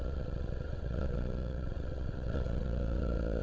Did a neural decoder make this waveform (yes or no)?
yes